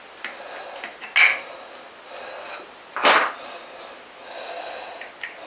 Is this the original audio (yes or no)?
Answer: yes